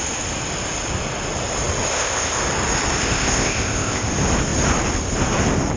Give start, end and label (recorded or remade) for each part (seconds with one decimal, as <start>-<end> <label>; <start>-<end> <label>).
0.0-1.9 recorded; 1.9-2.4 remade; 2.4-3.0 recorded; 3.0-4.1 remade; 4.1-5.8 recorded

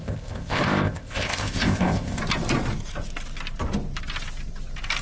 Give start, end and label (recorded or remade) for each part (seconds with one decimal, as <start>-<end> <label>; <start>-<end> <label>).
0.0-2.2 remade; 2.2-5.0 recorded